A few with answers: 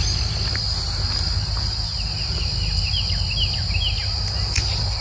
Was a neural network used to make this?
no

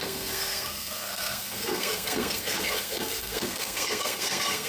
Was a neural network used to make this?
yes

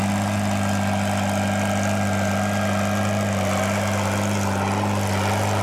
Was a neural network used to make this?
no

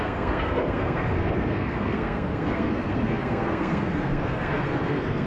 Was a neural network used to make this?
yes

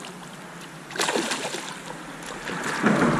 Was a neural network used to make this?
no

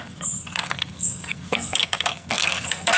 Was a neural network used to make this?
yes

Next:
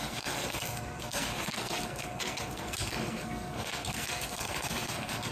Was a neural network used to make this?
yes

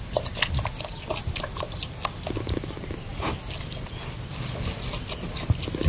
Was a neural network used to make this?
no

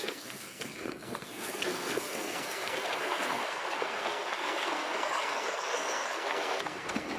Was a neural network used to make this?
yes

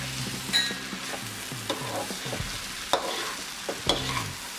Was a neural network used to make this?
no